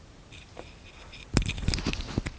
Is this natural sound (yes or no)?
yes